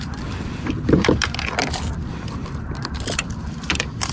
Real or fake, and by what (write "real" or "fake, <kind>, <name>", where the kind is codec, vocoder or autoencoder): fake, vocoder, BigVGAN v2